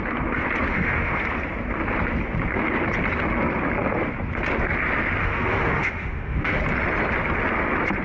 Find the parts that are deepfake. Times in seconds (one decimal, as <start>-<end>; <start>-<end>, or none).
0.7-1.2; 5.2-6.6